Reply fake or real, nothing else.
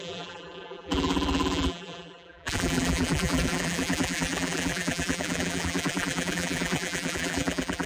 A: fake